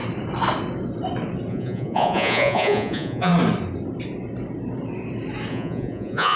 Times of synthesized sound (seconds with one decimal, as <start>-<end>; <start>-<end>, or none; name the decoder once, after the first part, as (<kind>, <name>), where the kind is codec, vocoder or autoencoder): 1.5-3.3 (vocoder, Vocos); 5.5-6.4